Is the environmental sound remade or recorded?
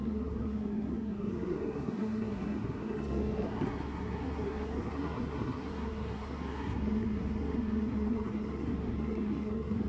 remade